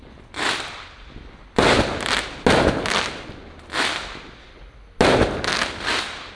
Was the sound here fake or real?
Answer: real